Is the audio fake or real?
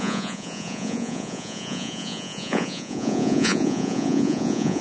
fake